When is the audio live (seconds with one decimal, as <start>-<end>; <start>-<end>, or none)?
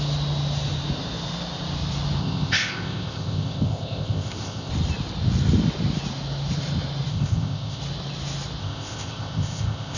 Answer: 0.0-2.2; 4.7-7.1; 7.8-8.6